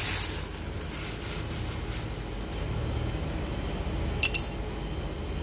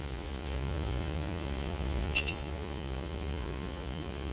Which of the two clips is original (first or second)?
first